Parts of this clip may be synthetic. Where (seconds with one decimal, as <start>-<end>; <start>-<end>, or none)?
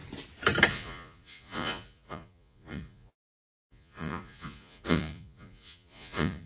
0.7-6.5